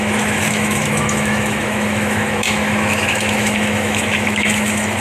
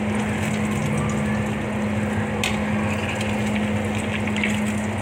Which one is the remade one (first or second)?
first